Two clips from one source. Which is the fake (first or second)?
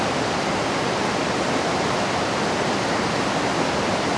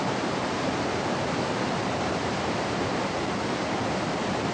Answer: second